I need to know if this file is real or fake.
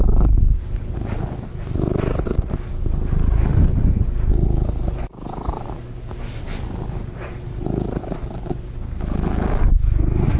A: real